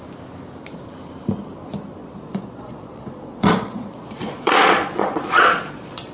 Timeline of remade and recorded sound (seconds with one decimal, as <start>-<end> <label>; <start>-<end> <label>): 0.0-2.0 recorded; 2.0-6.1 remade